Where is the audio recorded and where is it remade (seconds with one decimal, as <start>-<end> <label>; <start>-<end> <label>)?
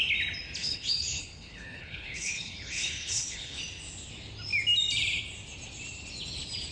0.0-0.6 recorded; 0.6-3.6 remade; 3.6-6.7 recorded